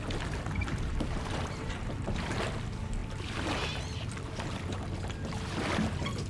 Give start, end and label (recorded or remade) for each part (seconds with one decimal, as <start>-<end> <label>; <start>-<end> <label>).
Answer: 0.0-0.6 recorded; 0.6-2.1 remade; 2.1-6.3 recorded